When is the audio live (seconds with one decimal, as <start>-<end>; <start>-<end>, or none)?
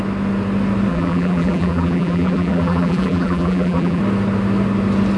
0.0-0.9; 4.0-5.2